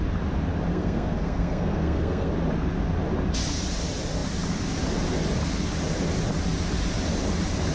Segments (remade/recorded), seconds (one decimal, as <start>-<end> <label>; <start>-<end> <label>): 0.0-0.7 recorded; 0.7-2.3 remade; 2.3-7.7 recorded

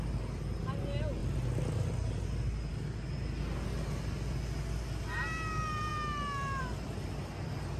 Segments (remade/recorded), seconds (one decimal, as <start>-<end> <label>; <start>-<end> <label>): 0.0-7.8 recorded